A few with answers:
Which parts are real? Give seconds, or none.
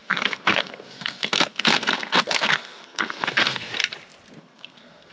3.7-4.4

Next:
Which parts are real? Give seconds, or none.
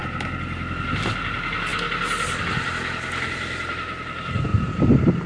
0.0-5.3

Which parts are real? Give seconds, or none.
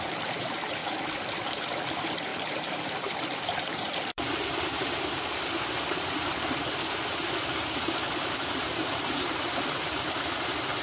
0.8-1.5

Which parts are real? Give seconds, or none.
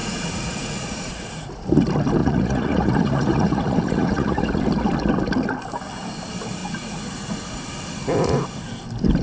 1.8-2.2; 4.6-6.6; 7.7-9.2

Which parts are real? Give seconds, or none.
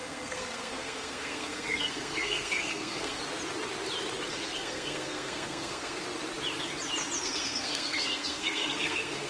3.2-4.3; 6.0-7.2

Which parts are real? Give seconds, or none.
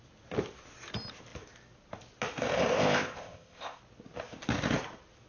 0.0-2.7; 3.8-5.3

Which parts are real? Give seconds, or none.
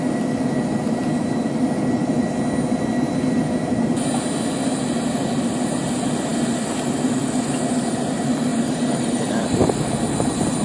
0.0-8.5; 9.9-10.6